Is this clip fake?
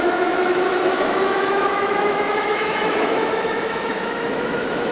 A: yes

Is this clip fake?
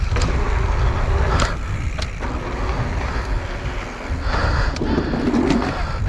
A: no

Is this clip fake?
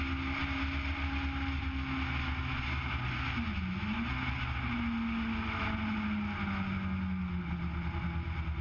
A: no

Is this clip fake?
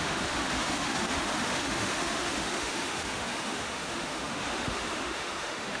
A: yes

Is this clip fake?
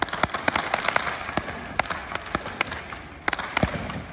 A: no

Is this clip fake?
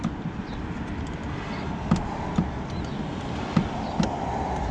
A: no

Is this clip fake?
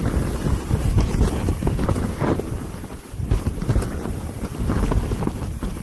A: no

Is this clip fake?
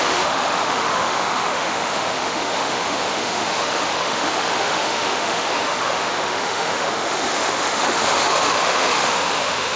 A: yes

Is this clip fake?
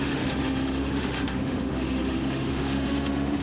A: yes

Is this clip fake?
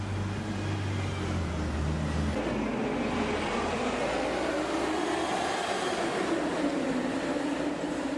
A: no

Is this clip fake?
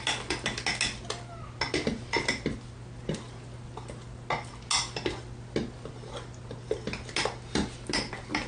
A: no